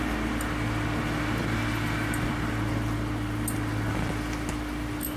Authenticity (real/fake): real